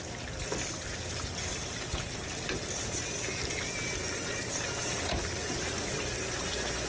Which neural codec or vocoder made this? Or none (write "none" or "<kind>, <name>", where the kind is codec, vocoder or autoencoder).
none